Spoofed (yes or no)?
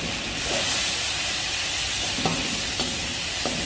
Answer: no